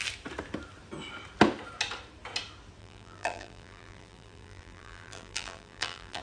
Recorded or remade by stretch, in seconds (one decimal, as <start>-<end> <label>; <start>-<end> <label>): 0.0-2.8 recorded; 2.8-6.2 remade

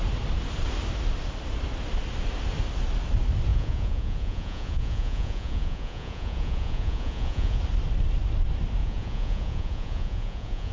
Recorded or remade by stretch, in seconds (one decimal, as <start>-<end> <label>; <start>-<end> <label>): 0.0-3.5 recorded; 3.5-7.6 remade; 7.6-8.8 recorded; 8.8-10.7 remade

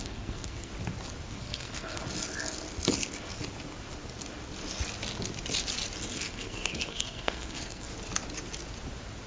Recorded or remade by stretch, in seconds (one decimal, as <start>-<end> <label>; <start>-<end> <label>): 0.0-0.7 remade; 0.7-1.3 recorded; 1.3-2.0 remade; 2.0-6.1 recorded; 6.1-7.9 remade; 7.9-9.3 recorded